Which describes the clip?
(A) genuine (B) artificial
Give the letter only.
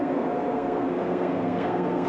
B